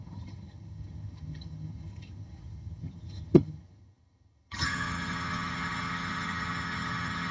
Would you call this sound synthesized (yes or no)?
yes